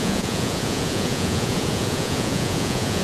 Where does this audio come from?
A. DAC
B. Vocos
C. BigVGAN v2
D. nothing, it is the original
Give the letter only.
B